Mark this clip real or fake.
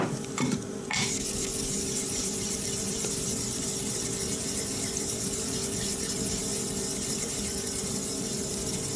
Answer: fake